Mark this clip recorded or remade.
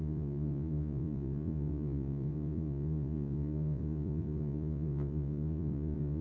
remade